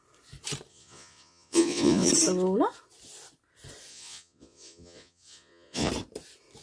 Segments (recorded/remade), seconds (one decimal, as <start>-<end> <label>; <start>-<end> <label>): 0.0-0.7 recorded; 0.7-2.1 remade; 2.1-3.9 recorded; 3.9-5.9 remade; 5.9-6.6 recorded